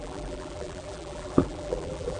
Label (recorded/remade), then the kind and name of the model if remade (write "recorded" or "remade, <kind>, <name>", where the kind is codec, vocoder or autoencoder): remade, vocoder, BigVGAN v2